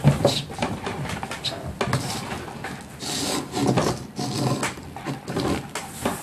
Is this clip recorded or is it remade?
recorded